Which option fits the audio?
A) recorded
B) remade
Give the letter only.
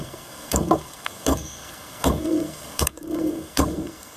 B